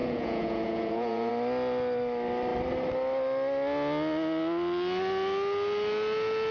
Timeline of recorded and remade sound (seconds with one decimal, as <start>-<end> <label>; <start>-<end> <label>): 0.0-1.3 remade; 1.3-6.5 recorded